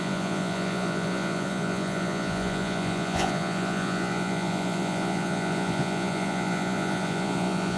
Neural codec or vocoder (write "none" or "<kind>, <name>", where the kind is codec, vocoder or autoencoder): vocoder, Vocos